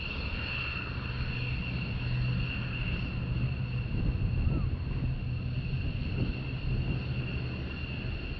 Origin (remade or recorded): recorded